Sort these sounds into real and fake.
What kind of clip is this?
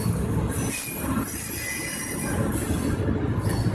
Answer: real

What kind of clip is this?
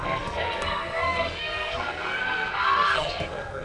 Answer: fake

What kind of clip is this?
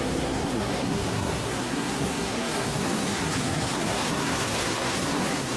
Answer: fake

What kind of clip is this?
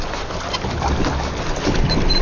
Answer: real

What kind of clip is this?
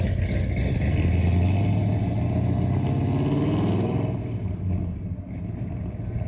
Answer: real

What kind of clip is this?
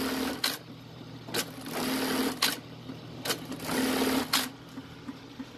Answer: real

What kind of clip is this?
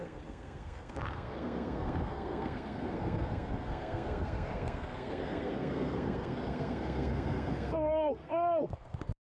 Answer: fake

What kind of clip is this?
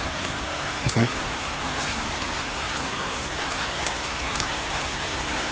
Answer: fake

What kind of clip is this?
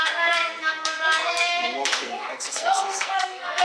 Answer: fake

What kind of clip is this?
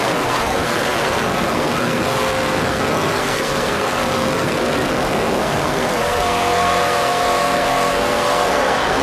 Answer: fake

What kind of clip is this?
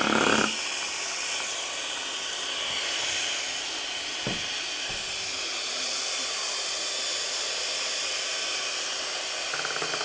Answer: real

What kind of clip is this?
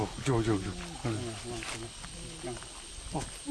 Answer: real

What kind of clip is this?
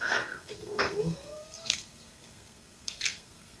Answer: fake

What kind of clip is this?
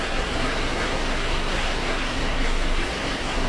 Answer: fake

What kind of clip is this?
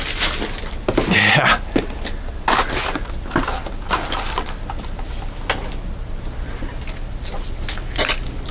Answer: real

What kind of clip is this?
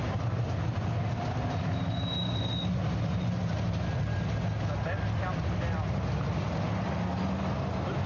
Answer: real